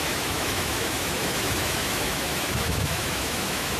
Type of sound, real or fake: fake